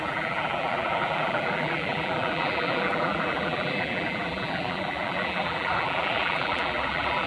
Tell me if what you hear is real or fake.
fake